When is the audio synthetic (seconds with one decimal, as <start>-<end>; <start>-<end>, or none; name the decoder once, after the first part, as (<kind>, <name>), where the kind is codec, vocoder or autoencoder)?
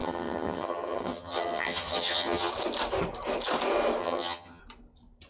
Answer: 0.0-2.5 (vocoder, HiFi-GAN); 4.0-4.6